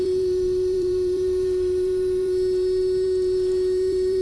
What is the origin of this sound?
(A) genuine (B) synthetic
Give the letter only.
B